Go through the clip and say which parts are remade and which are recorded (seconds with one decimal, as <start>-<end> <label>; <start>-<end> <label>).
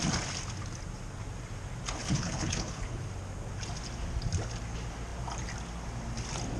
0.0-2.0 recorded; 2.0-3.0 remade; 3.0-6.6 recorded